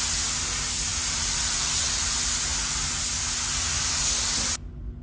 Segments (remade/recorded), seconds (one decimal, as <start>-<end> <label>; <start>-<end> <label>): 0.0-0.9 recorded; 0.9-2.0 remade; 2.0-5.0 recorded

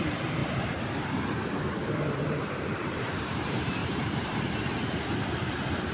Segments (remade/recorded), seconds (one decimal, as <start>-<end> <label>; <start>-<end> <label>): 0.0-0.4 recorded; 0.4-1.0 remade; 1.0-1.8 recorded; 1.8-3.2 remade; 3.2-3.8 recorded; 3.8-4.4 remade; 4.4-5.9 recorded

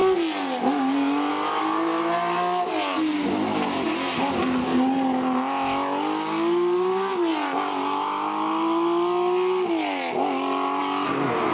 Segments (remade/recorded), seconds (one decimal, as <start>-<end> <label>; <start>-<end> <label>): 0.0-11.5 recorded